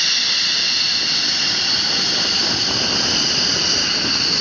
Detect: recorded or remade recorded